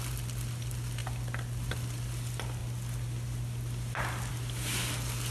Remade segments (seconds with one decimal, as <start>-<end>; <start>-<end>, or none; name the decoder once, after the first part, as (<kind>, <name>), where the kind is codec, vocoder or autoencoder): none